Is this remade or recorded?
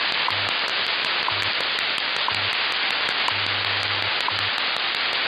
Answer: recorded